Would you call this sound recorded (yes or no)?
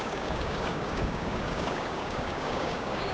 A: no